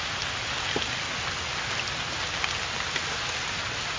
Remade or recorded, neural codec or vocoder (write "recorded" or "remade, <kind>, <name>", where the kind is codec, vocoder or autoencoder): recorded